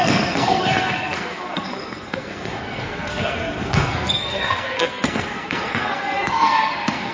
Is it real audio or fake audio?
fake